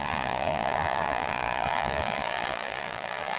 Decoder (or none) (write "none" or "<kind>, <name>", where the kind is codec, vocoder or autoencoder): vocoder, Vocos